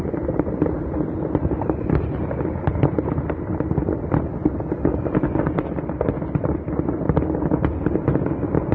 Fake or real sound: real